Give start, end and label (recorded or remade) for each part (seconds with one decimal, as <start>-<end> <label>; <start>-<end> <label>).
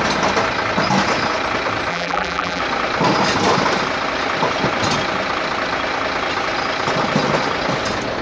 0.0-1.9 recorded; 1.9-2.6 remade; 2.6-8.2 recorded